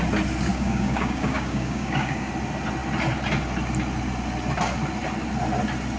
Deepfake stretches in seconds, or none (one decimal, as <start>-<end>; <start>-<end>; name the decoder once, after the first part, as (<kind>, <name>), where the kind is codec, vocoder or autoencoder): 0.5-2.3 (codec, DAC)